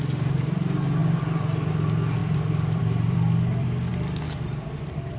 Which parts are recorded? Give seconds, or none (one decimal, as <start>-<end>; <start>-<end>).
none

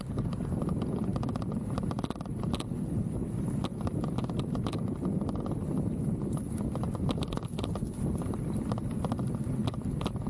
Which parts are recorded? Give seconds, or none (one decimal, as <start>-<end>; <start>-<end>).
1.1-2.0

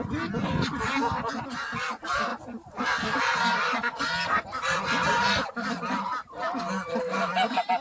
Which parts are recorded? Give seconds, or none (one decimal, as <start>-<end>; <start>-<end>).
0.0-7.8

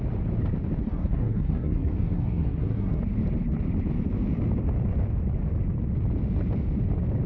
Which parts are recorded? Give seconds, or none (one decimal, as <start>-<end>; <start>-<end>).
0.0-0.8; 3.0-7.3

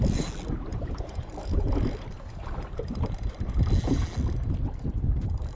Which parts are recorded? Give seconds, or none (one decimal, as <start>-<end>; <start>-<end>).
0.0-5.6

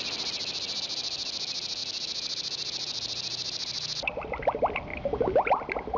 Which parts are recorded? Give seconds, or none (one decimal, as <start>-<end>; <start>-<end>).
0.0-6.0

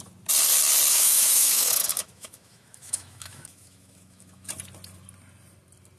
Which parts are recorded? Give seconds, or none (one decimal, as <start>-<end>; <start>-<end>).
0.0-0.9; 4.5-6.0